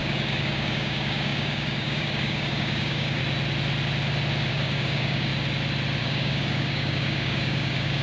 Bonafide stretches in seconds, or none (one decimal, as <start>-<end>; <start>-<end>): 3.2-4.5; 5.3-6.0